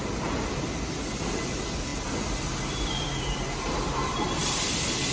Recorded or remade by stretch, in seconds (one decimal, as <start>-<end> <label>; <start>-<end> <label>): 0.0-5.1 recorded